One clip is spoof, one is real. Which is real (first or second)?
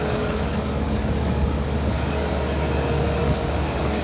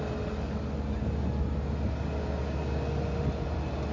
second